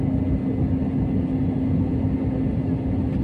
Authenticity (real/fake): real